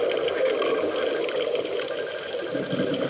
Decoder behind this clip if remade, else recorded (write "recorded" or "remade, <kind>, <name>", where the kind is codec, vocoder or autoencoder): recorded